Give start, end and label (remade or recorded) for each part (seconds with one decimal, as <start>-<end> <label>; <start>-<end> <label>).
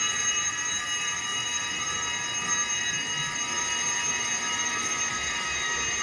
0.0-6.0 recorded